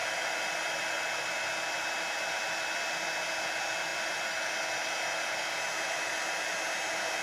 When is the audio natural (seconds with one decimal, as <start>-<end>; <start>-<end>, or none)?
0.0-7.2